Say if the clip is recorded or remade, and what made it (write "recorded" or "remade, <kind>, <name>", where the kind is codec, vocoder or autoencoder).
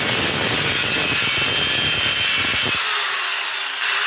recorded